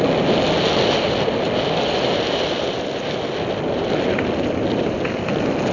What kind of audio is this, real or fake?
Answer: real